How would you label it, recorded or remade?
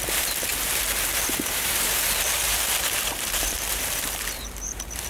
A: remade